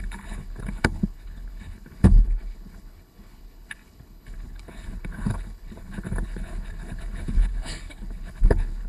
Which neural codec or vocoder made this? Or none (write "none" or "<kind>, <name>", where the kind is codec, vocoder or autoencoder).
codec, HILCodec